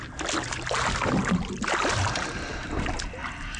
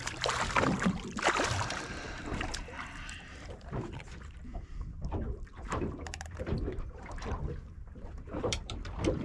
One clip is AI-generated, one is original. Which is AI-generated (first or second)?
second